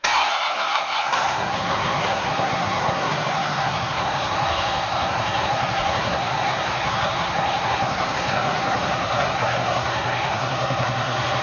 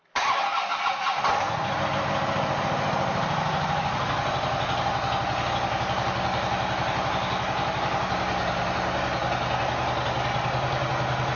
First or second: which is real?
second